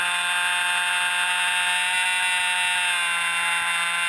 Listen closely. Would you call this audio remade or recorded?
recorded